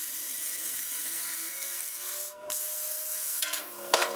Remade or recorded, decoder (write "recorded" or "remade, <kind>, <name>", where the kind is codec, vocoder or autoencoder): remade, codec, SNAC